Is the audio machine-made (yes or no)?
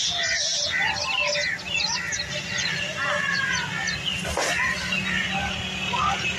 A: no